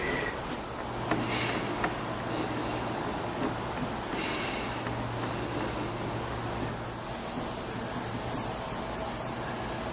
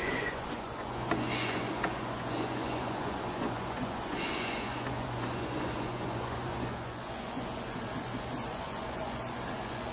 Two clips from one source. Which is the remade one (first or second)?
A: second